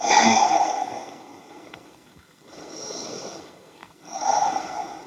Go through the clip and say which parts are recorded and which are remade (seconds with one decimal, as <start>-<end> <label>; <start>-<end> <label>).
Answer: 0.0-5.1 remade